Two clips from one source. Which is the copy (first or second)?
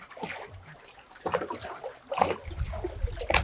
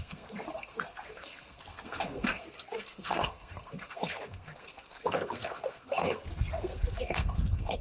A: second